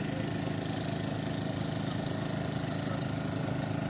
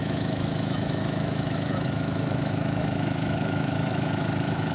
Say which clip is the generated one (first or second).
second